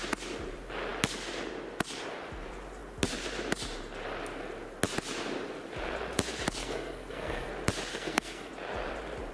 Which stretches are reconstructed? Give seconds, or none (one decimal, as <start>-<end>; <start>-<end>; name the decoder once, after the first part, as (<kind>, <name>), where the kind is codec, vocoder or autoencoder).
6.6-7.5 (codec, SNAC); 7.9-8.5